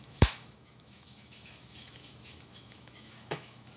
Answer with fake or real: fake